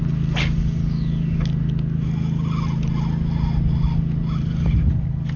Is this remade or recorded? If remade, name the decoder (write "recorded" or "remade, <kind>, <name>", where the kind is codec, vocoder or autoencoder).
recorded